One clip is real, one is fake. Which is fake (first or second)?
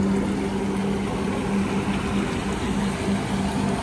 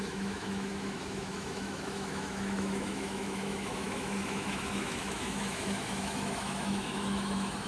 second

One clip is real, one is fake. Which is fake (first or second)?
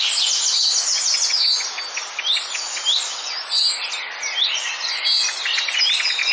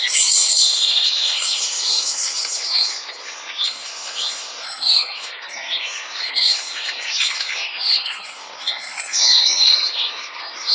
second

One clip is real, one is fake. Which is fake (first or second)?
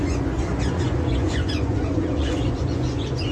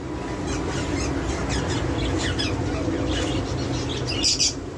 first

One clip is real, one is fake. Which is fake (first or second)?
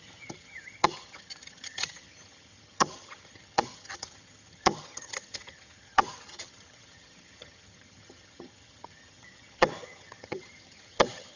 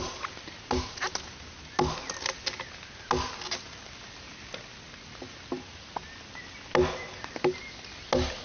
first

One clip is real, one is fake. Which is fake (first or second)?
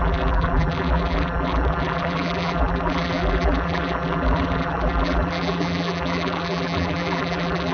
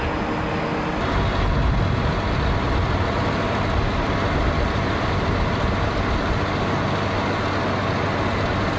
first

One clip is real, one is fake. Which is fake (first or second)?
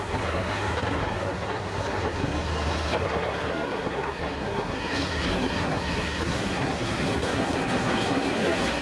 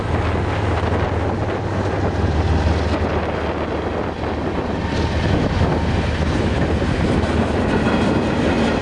first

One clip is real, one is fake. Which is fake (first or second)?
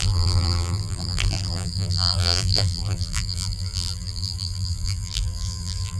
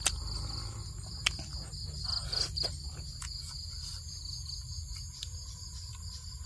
first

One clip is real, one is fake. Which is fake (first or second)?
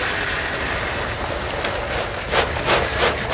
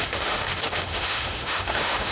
second